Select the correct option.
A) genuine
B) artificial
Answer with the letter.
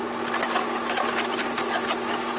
A